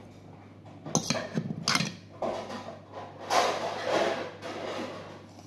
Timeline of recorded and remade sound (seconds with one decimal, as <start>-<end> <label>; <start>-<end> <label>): 0.0-5.5 recorded